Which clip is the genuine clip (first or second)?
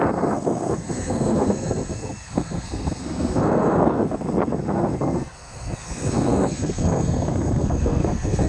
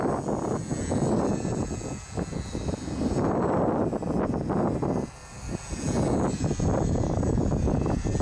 second